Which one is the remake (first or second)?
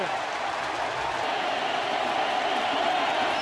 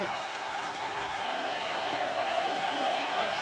second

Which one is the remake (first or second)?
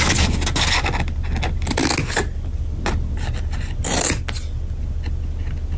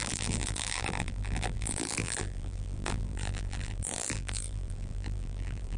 second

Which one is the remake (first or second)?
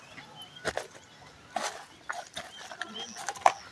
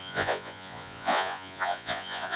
second